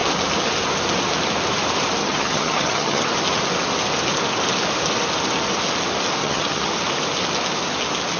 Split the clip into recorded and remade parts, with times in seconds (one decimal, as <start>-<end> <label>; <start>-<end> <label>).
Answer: 0.0-2.0 recorded; 2.0-3.1 remade; 3.1-6.2 recorded; 6.2-6.7 remade; 6.7-8.2 recorded

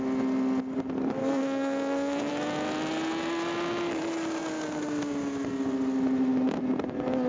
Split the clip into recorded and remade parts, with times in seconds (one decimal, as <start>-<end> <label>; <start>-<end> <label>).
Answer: 0.0-1.2 recorded; 1.2-2.3 remade; 2.3-7.3 recorded

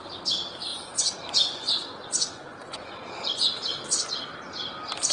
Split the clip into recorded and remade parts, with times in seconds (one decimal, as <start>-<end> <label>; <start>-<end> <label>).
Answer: 0.0-0.7 recorded; 0.7-3.8 remade; 3.8-5.1 recorded

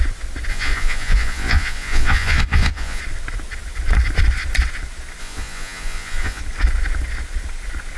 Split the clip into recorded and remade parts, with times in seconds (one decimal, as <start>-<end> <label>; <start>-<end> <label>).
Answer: 0.0-0.5 recorded; 0.5-3.0 remade; 3.0-5.2 recorded; 5.2-6.4 remade; 6.4-8.0 recorded

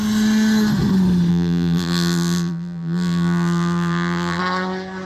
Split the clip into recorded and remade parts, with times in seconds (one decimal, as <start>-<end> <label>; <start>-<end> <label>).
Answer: 0.0-1.3 recorded; 1.3-4.4 remade; 4.4-5.1 recorded

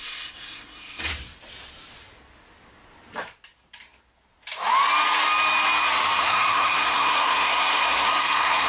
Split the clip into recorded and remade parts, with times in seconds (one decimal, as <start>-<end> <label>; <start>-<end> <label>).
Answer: 0.0-1.1 remade; 1.1-6.2 recorded; 6.2-8.7 remade